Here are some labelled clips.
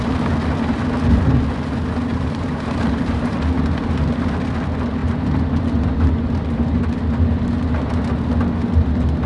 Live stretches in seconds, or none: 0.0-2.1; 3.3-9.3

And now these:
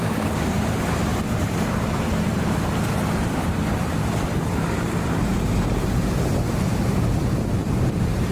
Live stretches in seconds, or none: none

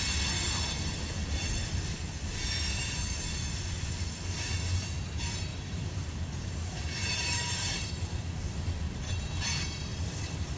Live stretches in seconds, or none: 0.0-5.5; 7.9-9.9

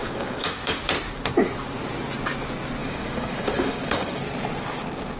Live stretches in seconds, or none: 0.8-2.8; 4.2-5.2

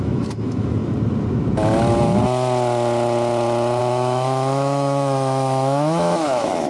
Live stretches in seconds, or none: 0.8-3.8

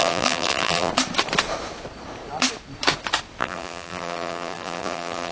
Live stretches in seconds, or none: 0.9-3.4

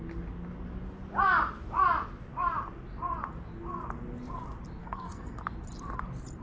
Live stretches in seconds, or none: 0.0-4.8; 5.4-6.4

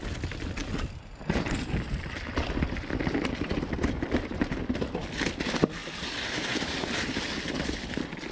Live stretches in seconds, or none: 0.0-8.3